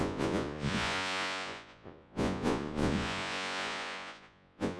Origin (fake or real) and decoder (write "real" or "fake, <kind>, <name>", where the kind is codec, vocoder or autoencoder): fake, vocoder, Vocos